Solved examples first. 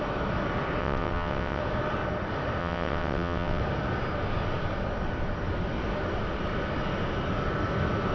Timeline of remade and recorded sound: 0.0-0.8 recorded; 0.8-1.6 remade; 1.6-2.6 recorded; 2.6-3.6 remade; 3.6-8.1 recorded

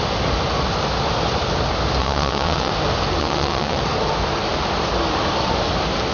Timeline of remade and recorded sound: 0.0-2.0 recorded; 2.0-2.7 remade; 2.7-3.2 recorded; 3.2-3.8 remade; 3.8-6.1 recorded

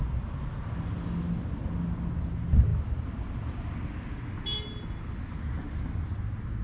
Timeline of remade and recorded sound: 0.0-6.6 recorded

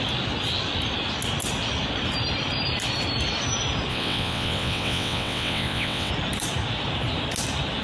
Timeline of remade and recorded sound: 0.0-3.9 recorded; 3.9-6.1 remade; 6.1-7.8 recorded